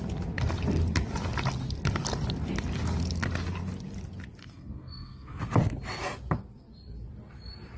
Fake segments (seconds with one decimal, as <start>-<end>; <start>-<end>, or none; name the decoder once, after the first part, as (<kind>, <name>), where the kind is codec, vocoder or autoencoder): 4.4-5.4 (codec, SNAC)